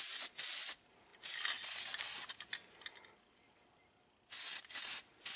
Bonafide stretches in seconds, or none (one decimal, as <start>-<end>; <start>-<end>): 0.0-5.4